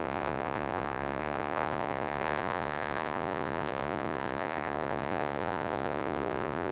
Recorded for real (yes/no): no